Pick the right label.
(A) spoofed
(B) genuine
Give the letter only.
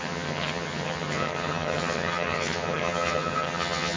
A